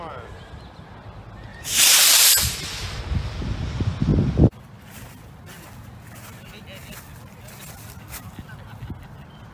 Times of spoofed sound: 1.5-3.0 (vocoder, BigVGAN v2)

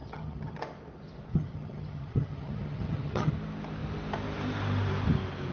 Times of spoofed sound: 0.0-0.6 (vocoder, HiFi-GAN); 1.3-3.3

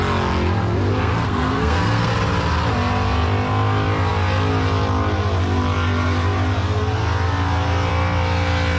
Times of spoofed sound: 0.9-2.1 (codec, SNAC)